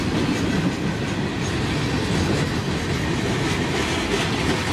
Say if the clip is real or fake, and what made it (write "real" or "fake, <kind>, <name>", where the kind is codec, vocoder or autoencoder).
real